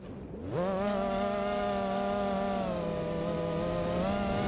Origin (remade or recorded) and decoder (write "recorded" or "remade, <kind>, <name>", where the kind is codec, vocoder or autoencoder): recorded